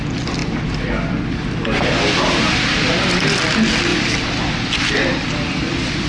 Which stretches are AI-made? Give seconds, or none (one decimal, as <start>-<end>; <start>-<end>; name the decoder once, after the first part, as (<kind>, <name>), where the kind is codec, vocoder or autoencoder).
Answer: 3.9-5.2 (vocoder, BigVGAN v2)